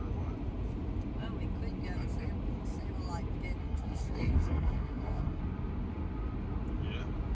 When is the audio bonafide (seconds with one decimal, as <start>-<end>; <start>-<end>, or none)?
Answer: 0.0-3.6; 5.4-7.3